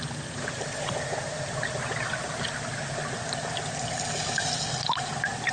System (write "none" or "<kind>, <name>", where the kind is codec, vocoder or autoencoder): none